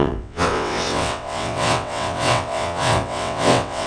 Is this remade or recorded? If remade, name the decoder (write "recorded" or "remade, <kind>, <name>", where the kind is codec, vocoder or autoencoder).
remade, vocoder, WaveNeXt